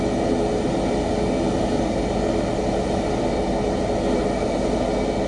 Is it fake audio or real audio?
real